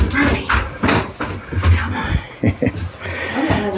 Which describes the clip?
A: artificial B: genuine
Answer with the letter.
B